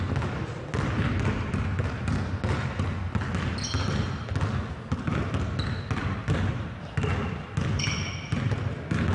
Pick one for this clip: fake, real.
real